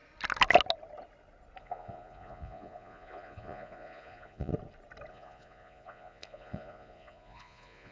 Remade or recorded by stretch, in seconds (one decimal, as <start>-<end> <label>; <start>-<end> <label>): 0.0-1.6 recorded; 1.6-4.5 remade; 4.5-5.1 recorded; 5.1-7.9 remade